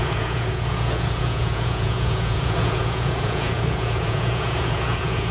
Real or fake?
fake